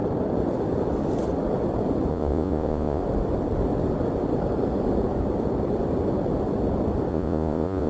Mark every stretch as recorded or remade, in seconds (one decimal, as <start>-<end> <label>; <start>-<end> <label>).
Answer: 0.0-2.1 recorded; 2.1-3.0 remade; 3.0-7.1 recorded; 7.1-7.9 remade